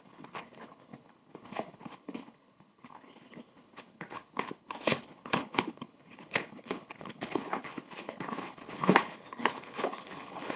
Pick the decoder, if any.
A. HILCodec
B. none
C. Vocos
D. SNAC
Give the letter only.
A